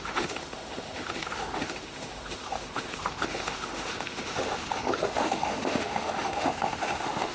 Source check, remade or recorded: remade